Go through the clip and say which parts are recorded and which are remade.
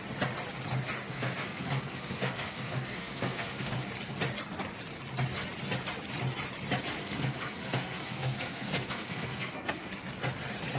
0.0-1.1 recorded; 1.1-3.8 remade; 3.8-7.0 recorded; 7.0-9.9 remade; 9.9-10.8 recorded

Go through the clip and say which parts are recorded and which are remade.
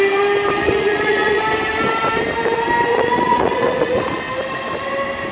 0.0-0.6 recorded; 0.6-1.4 remade; 1.4-2.9 recorded; 2.9-4.2 remade; 4.2-5.3 recorded